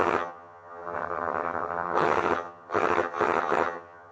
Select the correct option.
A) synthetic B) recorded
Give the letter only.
A